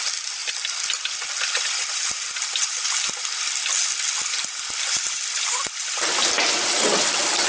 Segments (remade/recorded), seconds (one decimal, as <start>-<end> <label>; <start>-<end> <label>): 0.0-7.5 recorded